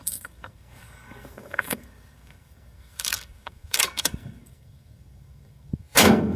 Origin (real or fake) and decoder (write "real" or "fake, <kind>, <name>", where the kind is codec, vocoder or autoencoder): fake, codec, SNAC